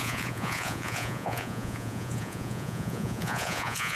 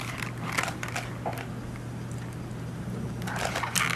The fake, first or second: first